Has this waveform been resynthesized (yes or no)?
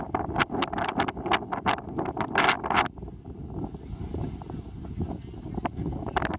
no